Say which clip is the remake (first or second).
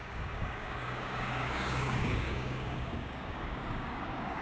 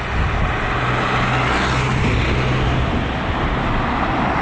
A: first